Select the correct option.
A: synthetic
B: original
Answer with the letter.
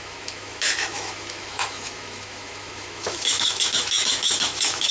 A